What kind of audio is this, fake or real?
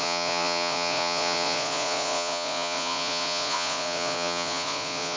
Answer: fake